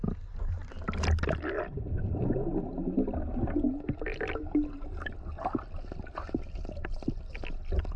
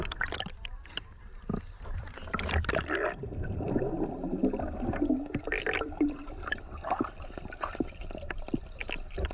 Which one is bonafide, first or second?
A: first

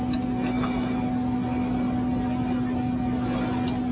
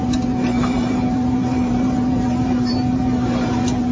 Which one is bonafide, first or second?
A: first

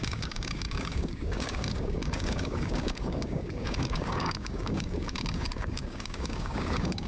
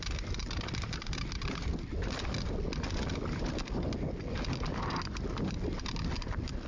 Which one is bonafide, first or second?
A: second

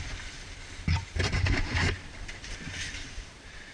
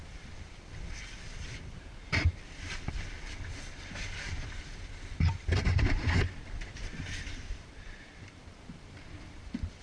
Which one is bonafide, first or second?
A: first